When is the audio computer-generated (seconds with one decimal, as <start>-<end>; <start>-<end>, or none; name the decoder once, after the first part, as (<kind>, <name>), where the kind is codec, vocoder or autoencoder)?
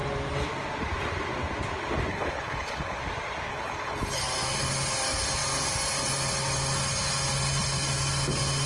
2.1-3.0 (codec, HILCodec); 3.5-4.2